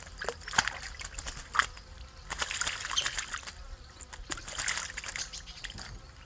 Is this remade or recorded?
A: recorded